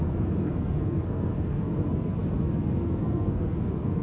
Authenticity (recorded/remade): remade